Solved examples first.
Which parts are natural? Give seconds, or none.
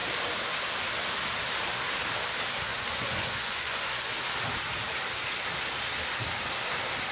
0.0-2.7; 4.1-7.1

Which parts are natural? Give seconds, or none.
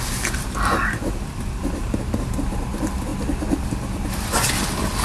0.0-5.0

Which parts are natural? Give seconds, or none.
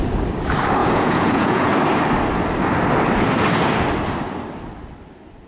0.0-0.8; 1.7-5.5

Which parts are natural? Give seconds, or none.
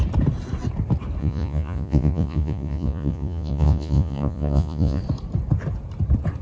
0.0-1.2; 5.0-6.4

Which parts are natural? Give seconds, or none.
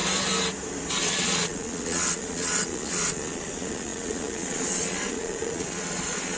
0.0-1.1